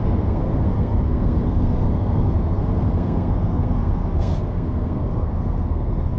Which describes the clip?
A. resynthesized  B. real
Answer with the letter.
A